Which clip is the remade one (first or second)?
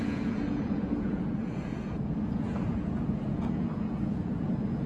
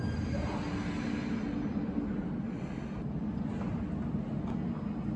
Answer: first